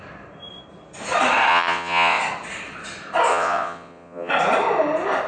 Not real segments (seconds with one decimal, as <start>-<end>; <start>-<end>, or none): 1.5-2.2; 3.3-4.3